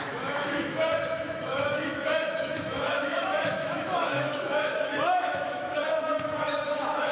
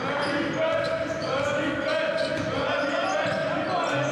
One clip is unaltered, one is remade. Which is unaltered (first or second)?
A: second